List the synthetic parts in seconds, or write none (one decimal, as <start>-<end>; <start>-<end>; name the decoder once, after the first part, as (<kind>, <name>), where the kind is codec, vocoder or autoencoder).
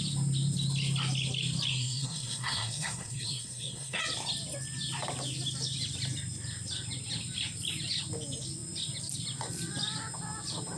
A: 1.7-4.0 (codec, SNAC)